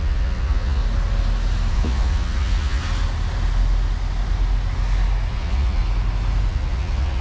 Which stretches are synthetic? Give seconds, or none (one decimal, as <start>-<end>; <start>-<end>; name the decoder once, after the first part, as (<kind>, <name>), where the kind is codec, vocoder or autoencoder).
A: 0.0-0.8 (vocoder, Vocos); 1.7-2.8; 5.3-5.8; 6.5-7.2